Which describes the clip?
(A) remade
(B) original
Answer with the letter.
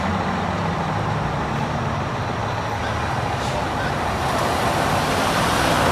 B